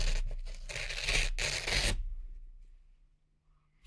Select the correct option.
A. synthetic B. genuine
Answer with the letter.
B